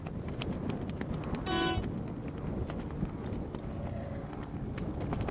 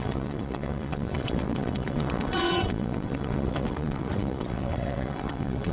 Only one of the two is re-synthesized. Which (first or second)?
second